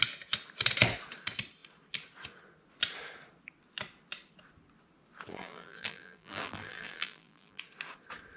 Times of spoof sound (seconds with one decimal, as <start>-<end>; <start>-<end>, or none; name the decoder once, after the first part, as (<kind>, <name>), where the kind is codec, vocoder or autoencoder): 5.3-7.6 (vocoder, BigVGAN v2)